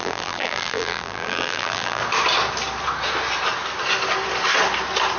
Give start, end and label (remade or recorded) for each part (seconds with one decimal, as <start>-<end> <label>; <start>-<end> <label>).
0.0-2.0 remade; 2.0-5.2 recorded